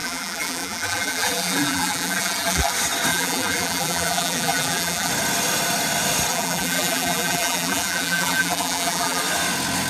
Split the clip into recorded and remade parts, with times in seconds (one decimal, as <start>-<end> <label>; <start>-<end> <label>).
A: 0.0-2.7 remade; 2.7-3.1 recorded; 3.1-5.1 remade; 5.1-6.3 recorded; 6.3-9.2 remade; 9.2-9.9 recorded